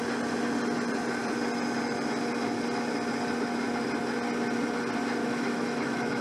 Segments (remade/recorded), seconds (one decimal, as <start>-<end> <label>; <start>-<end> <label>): 0.0-5.2 recorded; 5.2-6.2 remade